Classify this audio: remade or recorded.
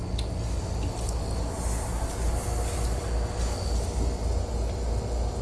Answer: recorded